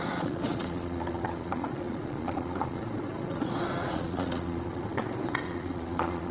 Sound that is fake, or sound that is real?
fake